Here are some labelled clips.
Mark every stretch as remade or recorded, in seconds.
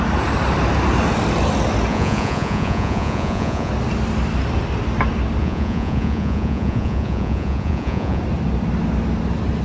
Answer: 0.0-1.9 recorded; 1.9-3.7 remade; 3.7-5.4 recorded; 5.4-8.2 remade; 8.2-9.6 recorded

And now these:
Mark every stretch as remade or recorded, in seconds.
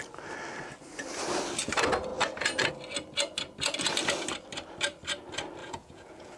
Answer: 0.0-5.6 recorded; 5.6-6.4 remade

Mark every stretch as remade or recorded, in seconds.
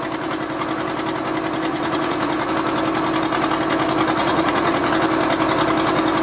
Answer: 0.0-1.7 recorded; 1.7-2.5 remade; 2.5-4.2 recorded; 4.2-4.9 remade; 4.9-6.2 recorded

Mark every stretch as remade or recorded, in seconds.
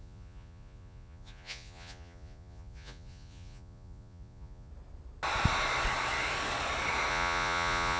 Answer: 0.0-4.7 remade; 4.7-7.1 recorded; 7.1-8.0 remade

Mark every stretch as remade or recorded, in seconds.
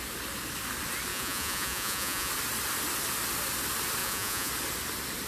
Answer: 0.0-1.1 recorded; 1.1-2.3 remade; 2.3-4.0 recorded; 4.0-4.5 remade; 4.5-5.3 recorded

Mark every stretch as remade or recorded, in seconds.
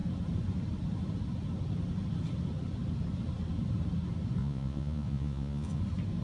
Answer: 0.0-4.4 recorded; 4.4-5.8 remade; 5.8-6.2 recorded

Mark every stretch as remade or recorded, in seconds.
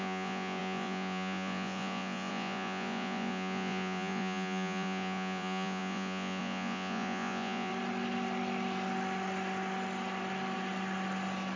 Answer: 0.0-7.7 remade; 7.7-11.6 recorded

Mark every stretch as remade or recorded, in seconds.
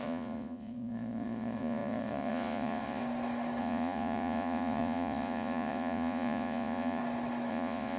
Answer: 0.0-3.0 remade; 3.0-3.6 recorded; 3.6-7.0 remade; 7.0-7.5 recorded; 7.5-8.0 remade